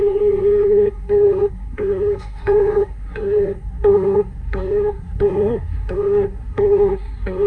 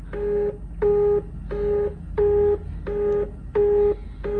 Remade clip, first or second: first